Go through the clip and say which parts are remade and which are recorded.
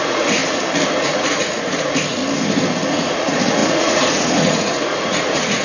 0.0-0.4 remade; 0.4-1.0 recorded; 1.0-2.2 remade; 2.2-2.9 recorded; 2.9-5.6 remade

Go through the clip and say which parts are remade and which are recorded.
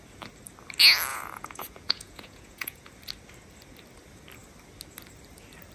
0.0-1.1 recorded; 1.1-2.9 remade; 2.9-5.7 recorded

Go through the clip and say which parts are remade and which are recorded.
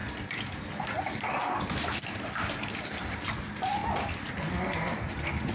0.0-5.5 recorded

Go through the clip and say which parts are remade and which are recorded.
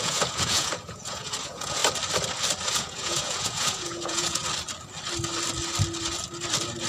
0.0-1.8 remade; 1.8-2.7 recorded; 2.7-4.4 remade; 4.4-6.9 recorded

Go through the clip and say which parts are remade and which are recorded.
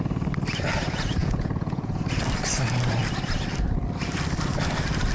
0.0-1.2 recorded; 1.2-2.0 remade; 2.0-5.1 recorded